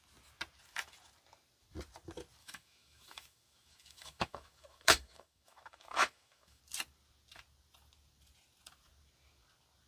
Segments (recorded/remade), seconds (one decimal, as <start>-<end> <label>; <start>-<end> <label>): 0.0-2.4 recorded; 2.4-6.6 remade; 6.6-9.9 recorded